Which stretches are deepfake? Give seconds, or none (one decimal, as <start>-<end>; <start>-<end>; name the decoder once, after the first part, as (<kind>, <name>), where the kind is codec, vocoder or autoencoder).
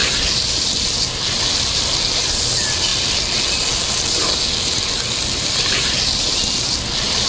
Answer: none